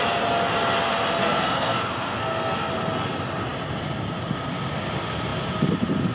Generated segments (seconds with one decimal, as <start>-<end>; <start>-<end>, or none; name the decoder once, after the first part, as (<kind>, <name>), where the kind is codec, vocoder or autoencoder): 1.2-2.7 (codec, SNAC)